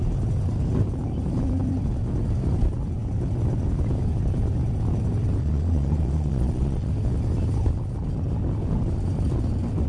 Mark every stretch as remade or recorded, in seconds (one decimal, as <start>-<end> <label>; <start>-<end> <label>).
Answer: 0.0-5.4 recorded; 5.4-6.9 remade; 6.9-9.9 recorded